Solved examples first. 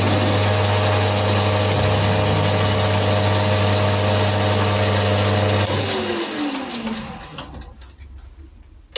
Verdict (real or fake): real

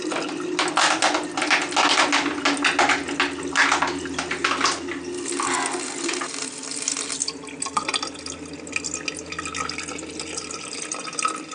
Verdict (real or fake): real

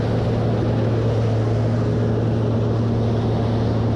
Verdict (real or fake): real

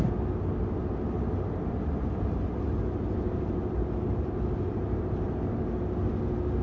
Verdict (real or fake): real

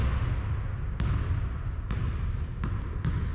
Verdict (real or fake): real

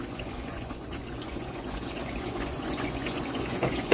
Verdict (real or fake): fake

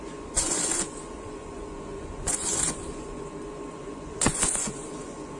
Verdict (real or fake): fake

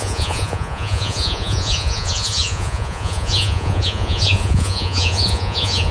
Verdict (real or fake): fake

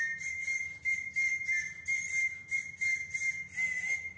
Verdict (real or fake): real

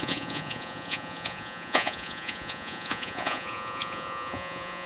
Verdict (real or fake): fake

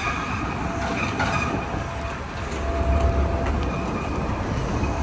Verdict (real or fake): real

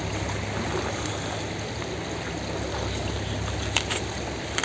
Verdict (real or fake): real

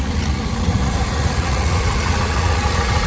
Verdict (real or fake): fake